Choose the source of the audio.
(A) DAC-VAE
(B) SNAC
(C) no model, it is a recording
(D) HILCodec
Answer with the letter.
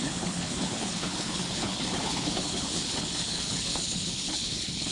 D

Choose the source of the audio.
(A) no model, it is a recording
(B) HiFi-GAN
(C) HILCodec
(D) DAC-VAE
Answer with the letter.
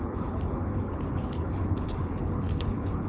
C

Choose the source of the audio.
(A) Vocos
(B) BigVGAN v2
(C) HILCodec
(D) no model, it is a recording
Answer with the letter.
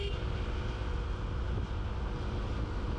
D